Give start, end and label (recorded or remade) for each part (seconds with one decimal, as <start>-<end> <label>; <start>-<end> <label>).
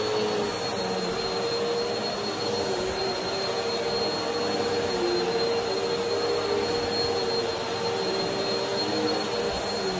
0.0-10.0 recorded